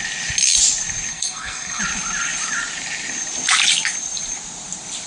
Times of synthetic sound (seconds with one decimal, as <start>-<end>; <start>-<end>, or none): 1.1-1.8